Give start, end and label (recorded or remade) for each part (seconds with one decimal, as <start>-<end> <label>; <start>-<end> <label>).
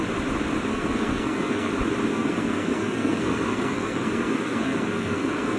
0.0-0.7 recorded; 0.7-1.7 remade; 1.7-2.1 recorded; 2.1-5.6 remade